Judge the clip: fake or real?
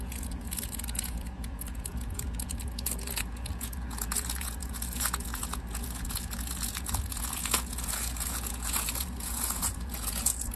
fake